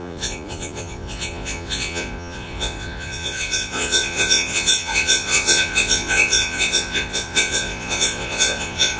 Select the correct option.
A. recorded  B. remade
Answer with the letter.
B